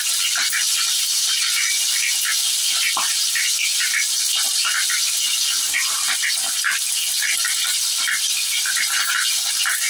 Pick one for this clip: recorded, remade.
recorded